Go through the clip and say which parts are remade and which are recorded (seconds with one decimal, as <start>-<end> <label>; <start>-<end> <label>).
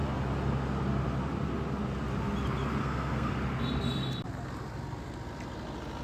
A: 0.0-2.8 recorded; 2.8-3.3 remade; 3.3-6.0 recorded